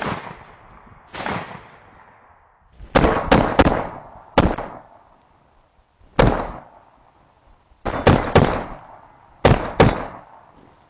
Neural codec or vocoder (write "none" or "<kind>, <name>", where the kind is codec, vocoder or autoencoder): none